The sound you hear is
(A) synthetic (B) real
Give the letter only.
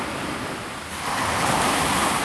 B